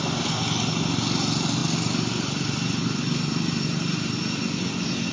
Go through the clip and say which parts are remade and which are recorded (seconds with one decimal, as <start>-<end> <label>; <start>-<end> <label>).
0.0-5.1 recorded